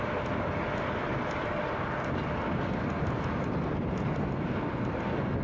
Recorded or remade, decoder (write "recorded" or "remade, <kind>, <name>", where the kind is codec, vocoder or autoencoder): recorded